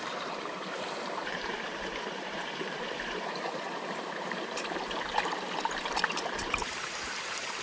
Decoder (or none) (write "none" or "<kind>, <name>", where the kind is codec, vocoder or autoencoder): vocoder, BigVGAN v2